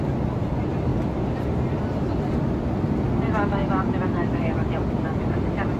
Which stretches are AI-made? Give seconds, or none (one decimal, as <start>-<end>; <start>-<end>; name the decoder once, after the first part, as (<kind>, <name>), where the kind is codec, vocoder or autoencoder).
none